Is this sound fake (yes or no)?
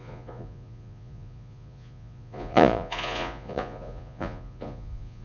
yes